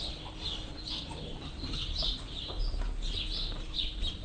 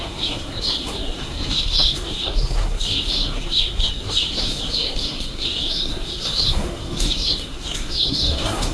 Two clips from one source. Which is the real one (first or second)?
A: first